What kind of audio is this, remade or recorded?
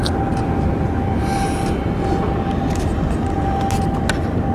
recorded